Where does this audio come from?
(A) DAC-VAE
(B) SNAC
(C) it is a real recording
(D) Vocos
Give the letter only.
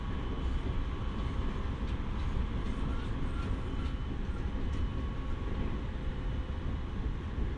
C